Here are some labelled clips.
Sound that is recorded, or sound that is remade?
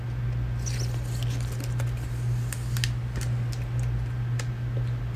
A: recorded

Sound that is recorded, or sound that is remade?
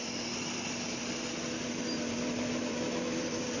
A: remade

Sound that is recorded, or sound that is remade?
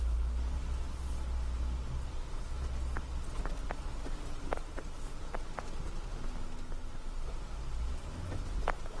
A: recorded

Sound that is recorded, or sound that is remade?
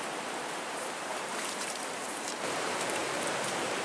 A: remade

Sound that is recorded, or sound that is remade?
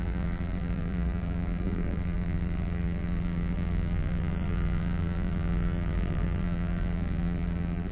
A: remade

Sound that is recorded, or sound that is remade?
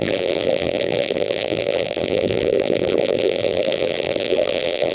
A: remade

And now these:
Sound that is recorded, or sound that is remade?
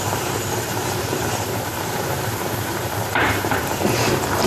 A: remade